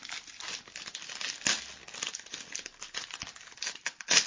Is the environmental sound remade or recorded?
recorded